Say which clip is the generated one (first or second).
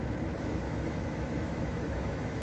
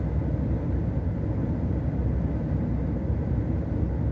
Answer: first